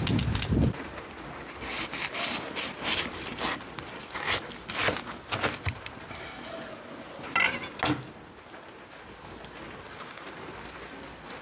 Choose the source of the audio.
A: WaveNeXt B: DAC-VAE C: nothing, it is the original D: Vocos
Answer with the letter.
C